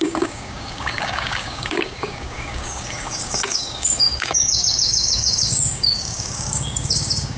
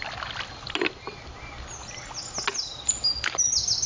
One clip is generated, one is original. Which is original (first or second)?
second